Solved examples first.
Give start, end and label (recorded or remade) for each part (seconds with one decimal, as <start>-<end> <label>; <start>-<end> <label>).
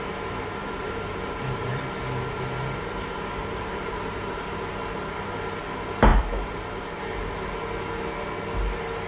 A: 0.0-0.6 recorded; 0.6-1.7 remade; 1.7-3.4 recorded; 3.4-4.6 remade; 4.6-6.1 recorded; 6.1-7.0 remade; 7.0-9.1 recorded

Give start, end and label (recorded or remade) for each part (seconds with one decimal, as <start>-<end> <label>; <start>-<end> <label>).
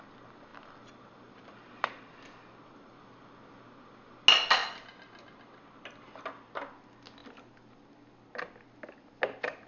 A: 0.0-9.7 recorded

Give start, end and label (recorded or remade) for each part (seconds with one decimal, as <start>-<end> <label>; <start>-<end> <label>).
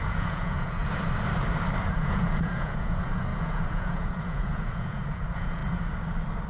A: 0.0-0.8 remade; 0.8-1.8 recorded; 1.8-5.6 remade; 5.6-6.5 recorded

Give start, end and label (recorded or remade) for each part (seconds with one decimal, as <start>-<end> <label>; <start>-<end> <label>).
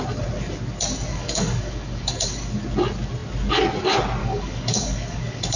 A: 0.0-1.1 recorded; 1.1-2.3 remade; 2.3-4.2 recorded; 4.2-5.6 remade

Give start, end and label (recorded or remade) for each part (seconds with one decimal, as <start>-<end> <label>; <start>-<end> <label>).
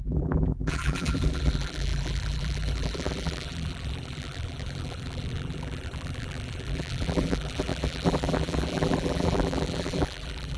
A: 0.0-10.6 remade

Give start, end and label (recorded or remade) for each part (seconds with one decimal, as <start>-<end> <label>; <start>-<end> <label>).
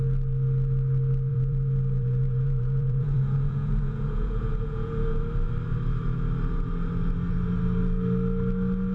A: 0.0-1.3 recorded; 1.3-5.2 remade; 5.2-8.9 recorded